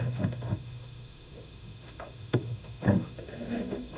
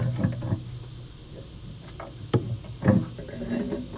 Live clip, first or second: second